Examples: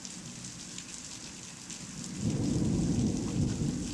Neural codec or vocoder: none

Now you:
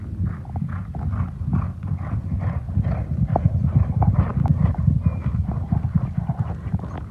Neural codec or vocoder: none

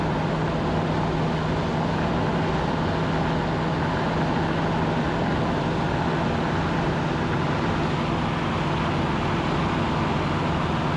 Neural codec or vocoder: none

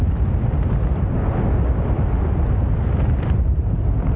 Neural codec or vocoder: none